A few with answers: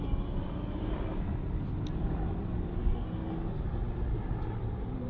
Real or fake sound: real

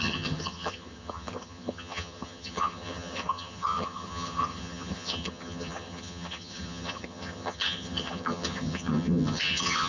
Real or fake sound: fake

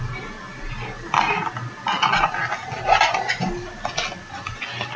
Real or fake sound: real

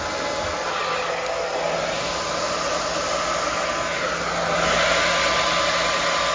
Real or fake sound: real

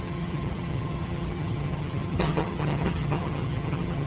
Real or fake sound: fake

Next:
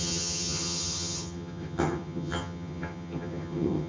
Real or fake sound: fake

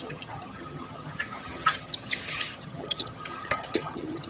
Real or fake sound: fake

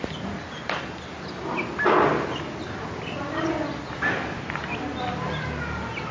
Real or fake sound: real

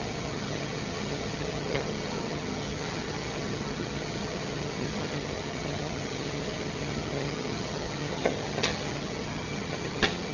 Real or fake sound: fake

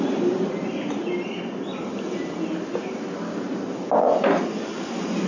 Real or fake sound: real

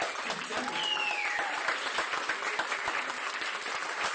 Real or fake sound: real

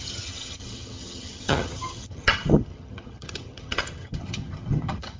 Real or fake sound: fake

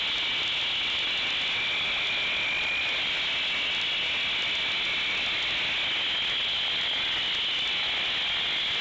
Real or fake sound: real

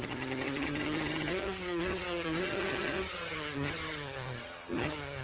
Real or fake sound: fake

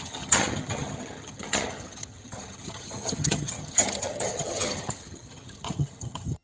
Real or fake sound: fake